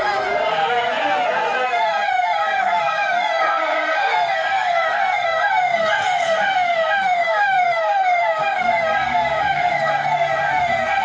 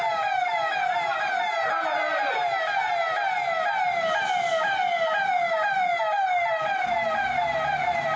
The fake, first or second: first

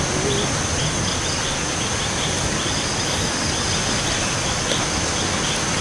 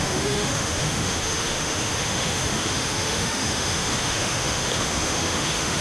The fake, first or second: second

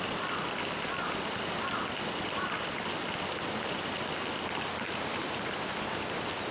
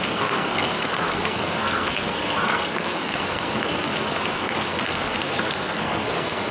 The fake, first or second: second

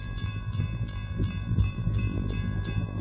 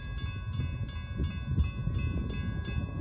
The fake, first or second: first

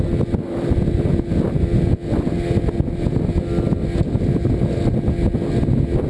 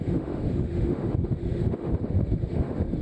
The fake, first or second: second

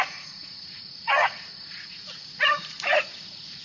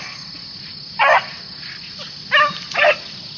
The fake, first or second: first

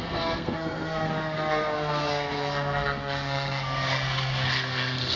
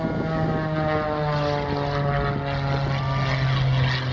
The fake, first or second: first